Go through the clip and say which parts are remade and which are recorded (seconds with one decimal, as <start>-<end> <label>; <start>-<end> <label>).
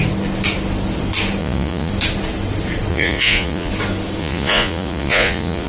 0.0-1.4 recorded; 1.4-1.9 remade; 1.9-2.9 recorded; 2.9-3.7 remade; 3.7-4.2 recorded; 4.2-5.7 remade